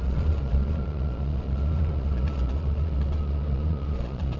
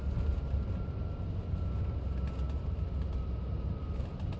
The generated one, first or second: first